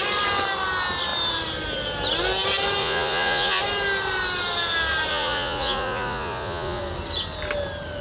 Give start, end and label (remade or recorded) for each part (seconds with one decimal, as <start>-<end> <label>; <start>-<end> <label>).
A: 0.0-2.8 recorded; 2.8-3.6 remade; 3.6-5.1 recorded; 5.1-6.8 remade; 6.8-8.0 recorded